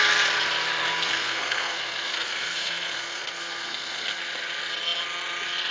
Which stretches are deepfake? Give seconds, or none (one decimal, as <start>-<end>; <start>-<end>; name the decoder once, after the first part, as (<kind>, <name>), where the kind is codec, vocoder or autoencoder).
0.9-4.2 (codec, SNAC)